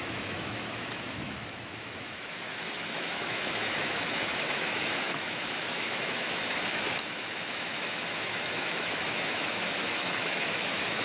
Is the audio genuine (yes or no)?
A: no